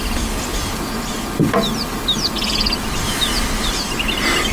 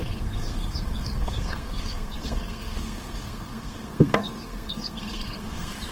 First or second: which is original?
first